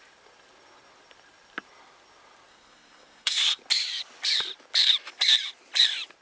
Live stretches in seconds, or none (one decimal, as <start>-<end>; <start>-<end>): 0.0-2.5; 3.6-6.2